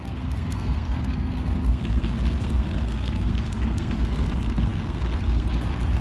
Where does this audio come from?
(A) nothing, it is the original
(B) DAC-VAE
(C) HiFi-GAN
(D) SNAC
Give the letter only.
D